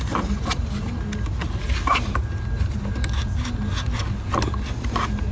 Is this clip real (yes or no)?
yes